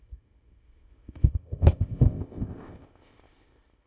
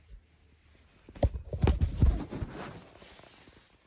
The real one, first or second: second